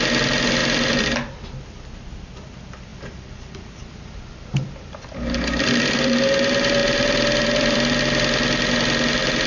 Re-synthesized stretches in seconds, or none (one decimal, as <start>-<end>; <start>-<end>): 0.6-1.5; 2.9-6.1; 6.8-8.0